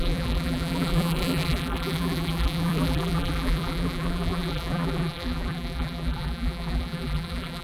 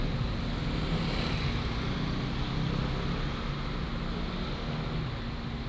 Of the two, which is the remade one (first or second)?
first